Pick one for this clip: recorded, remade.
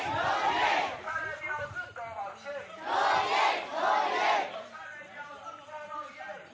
recorded